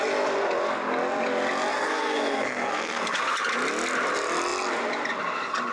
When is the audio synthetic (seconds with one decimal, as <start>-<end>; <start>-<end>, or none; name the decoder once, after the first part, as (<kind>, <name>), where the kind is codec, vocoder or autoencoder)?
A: 1.7-3.2 (codec, SNAC)